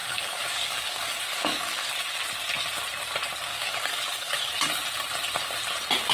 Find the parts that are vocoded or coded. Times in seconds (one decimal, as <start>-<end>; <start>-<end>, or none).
0.0-1.9; 3.5-4.5